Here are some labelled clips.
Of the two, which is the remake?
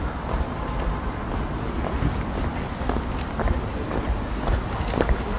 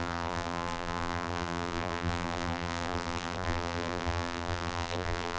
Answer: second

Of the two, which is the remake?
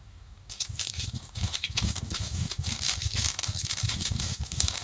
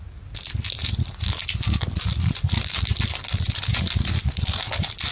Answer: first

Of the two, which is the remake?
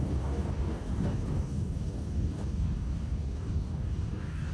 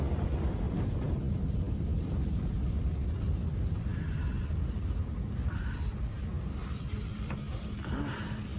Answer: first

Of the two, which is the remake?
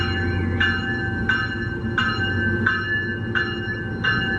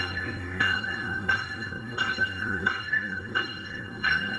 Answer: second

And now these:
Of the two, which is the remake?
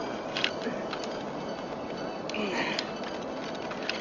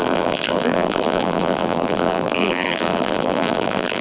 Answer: second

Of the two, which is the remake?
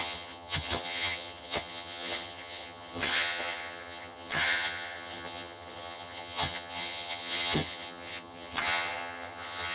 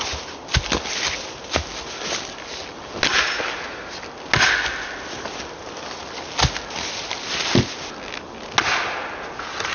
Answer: first